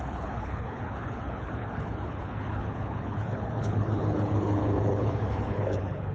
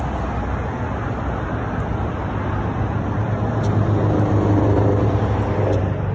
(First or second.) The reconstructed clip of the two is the first